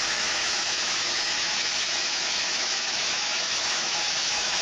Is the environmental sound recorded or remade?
remade